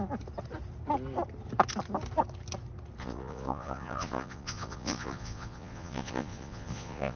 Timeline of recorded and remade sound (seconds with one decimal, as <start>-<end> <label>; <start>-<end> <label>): 0.0-3.0 recorded; 3.0-7.2 remade